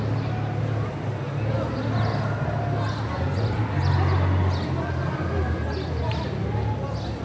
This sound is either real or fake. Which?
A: real